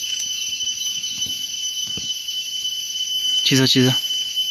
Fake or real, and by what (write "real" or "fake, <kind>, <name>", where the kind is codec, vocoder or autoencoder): fake, autoencoder, DAC-VAE